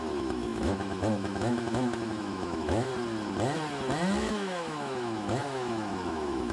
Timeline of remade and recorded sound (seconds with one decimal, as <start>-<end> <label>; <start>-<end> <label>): 0.0-2.9 remade; 2.9-4.2 recorded; 4.2-6.5 remade